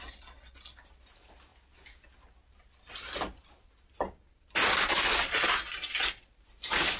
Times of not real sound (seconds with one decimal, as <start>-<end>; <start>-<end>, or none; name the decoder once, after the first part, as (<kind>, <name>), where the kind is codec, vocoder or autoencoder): none